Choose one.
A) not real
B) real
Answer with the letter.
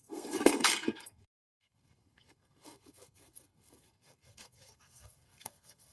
A